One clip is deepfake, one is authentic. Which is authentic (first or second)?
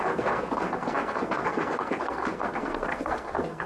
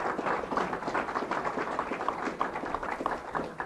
second